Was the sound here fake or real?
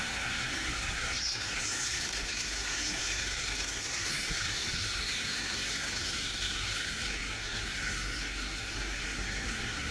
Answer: fake